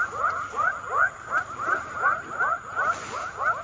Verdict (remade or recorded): recorded